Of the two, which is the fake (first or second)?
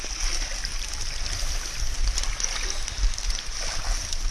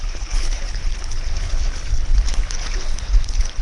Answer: second